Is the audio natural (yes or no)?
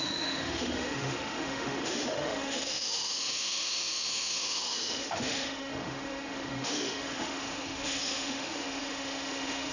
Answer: no